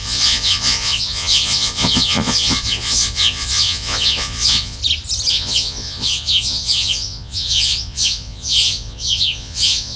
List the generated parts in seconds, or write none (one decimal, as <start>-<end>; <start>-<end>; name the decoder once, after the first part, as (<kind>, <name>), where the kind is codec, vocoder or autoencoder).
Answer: 0.0-4.8 (vocoder, Vocos); 5.3-10.0